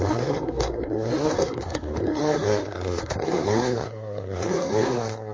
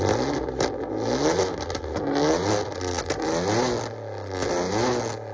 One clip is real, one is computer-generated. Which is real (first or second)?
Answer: second